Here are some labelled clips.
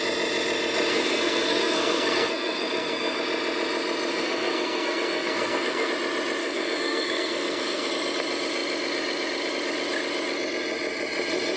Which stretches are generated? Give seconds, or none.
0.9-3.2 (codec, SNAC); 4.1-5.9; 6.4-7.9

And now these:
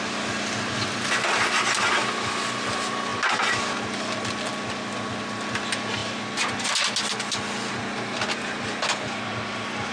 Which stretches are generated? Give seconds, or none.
none

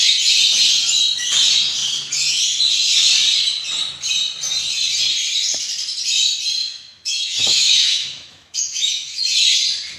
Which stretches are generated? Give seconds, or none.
6.6-9.2 (autoencoder, DAC-VAE)

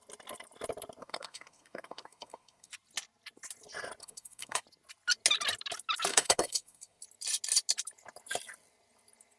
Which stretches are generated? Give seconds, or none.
1.0-2.7 (codec, SNAC); 4.0-4.6; 6.1-7.0

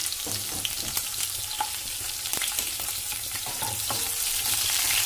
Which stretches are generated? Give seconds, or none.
0.9-5.1 (vocoder, BigVGAN v2)